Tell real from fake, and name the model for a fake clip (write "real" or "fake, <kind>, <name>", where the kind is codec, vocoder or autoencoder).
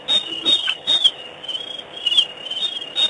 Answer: real